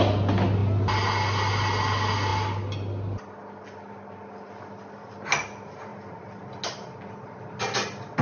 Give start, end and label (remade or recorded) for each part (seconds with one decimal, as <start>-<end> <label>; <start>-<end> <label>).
0.0-8.2 recorded